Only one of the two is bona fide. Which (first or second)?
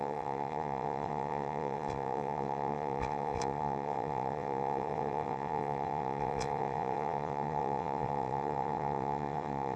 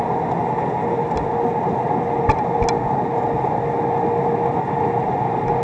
second